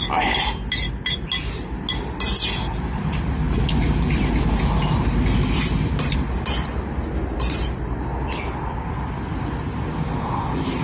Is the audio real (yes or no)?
yes